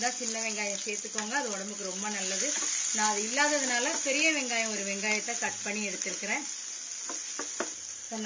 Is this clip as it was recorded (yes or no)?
yes